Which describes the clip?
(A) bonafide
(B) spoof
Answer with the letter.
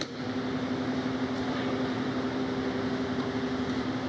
A